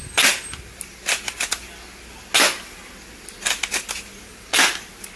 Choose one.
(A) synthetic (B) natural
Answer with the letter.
B